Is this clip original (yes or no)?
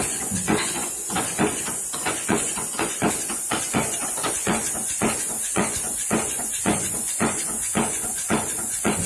no